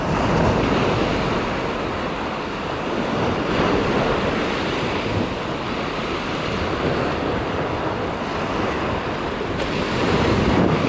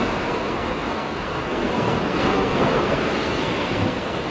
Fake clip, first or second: second